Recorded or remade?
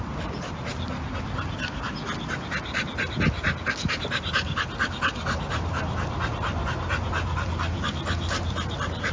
recorded